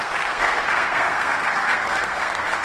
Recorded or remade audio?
remade